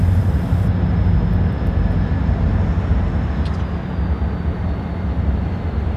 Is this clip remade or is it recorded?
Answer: recorded